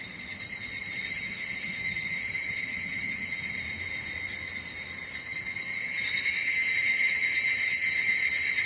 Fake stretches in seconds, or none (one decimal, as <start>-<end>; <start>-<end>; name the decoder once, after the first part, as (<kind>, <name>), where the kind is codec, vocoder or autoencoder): 0.0-3.4 (vocoder, HiFi-GAN); 5.2-8.7